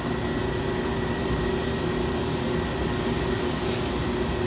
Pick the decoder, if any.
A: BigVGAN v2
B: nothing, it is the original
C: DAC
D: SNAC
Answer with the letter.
B